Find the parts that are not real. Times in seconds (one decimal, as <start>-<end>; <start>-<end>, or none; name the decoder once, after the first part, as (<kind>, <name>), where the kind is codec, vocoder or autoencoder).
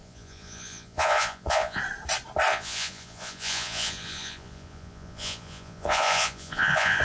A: 0.0-1.8 (vocoder, Vocos); 2.5-7.0